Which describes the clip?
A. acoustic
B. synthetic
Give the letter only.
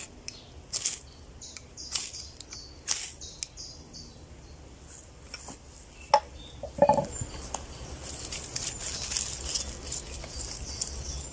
A